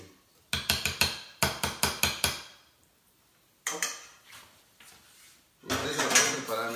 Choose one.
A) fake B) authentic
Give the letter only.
B